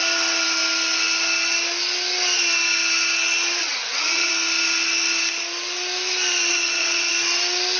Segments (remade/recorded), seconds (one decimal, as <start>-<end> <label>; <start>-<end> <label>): 0.0-3.6 recorded; 3.6-4.3 remade; 4.3-6.5 recorded; 6.5-7.1 remade; 7.1-7.8 recorded